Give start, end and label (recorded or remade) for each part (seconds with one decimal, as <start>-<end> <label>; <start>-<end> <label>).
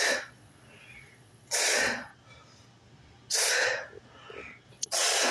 0.0-2.1 remade; 2.1-4.7 recorded; 4.7-5.3 remade